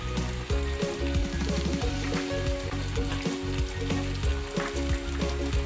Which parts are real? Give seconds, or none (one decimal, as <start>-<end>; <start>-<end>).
0.0-1.2; 3.1-5.7